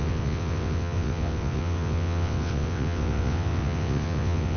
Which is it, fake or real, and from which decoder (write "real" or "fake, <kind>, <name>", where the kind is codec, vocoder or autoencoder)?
fake, vocoder, WaveNeXt